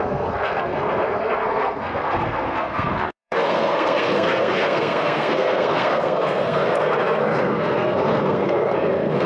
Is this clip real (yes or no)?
no